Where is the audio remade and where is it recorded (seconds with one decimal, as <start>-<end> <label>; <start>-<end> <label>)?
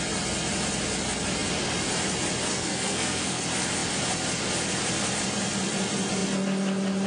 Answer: 0.0-2.5 recorded; 2.5-3.4 remade; 3.4-7.1 recorded